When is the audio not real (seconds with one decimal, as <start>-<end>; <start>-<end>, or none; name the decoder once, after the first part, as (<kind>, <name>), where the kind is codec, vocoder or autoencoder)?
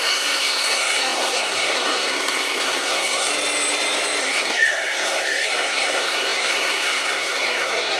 0.0-3.3 (codec, SNAC); 4.2-8.0